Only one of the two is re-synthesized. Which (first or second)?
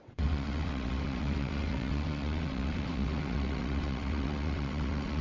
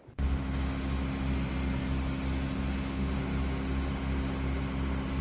first